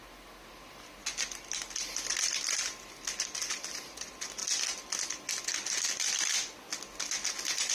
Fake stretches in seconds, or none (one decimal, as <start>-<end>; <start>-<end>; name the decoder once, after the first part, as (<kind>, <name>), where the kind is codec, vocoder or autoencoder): none